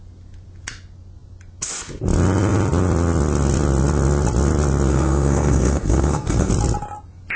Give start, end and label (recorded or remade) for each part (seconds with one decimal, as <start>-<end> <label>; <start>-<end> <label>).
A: 0.0-4.9 recorded; 4.9-6.5 remade; 6.5-7.4 recorded